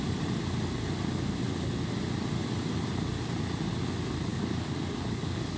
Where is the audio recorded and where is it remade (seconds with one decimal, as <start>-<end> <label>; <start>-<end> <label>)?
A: 0.0-4.3 recorded; 4.3-5.6 remade